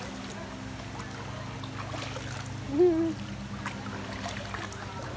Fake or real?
real